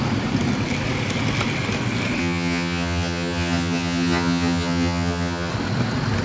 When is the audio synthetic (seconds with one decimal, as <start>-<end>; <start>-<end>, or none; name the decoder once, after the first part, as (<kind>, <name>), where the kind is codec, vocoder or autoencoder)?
2.2-5.5 (vocoder, HiFi-GAN)